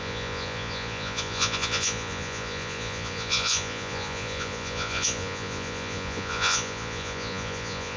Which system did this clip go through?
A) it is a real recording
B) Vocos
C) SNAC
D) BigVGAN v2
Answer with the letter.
B